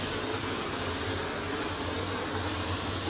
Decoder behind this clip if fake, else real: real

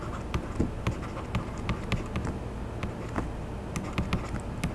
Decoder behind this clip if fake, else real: real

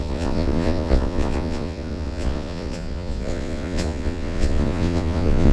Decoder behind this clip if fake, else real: fake, vocoder, Vocos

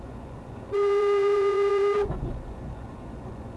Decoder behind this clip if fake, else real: fake, vocoder, Vocos